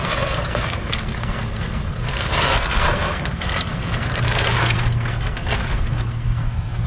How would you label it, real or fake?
fake